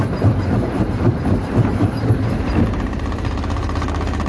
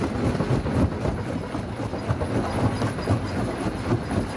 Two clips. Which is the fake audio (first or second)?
first